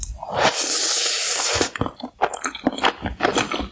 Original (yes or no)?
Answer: yes